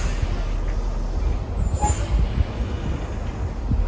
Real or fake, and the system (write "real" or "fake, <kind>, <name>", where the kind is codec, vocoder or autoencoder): real